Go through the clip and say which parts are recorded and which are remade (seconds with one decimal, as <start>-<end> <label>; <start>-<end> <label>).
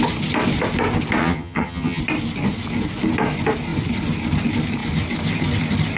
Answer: 0.0-1.2 recorded; 1.2-2.0 remade; 2.0-6.0 recorded